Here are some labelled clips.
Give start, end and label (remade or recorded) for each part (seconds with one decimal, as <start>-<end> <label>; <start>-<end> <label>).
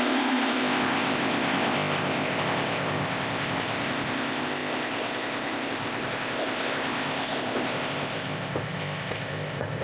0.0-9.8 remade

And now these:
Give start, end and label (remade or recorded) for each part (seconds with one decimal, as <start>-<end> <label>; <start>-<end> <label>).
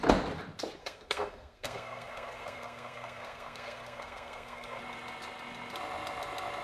0.0-0.8 recorded; 0.8-4.8 remade; 4.8-6.6 recorded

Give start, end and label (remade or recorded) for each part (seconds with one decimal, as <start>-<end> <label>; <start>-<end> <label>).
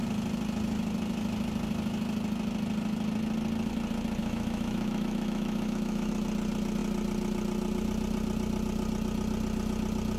0.0-4.2 recorded; 4.2-6.1 remade; 6.1-10.2 recorded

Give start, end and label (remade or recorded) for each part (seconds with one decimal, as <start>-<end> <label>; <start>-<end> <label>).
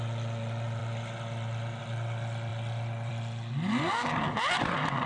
0.0-5.1 recorded